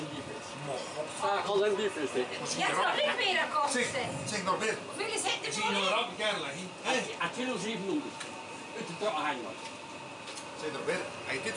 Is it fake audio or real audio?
real